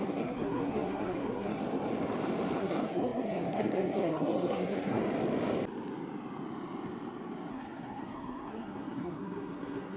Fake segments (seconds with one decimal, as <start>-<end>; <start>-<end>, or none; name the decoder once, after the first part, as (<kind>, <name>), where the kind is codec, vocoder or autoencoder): 0.0-1.6 (codec, SNAC); 2.6-5.0; 7.5-10.0